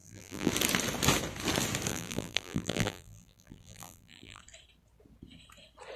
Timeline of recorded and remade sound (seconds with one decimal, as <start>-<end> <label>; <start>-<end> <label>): 0.0-0.5 remade; 0.5-1.9 recorded; 1.9-4.4 remade; 4.4-6.0 recorded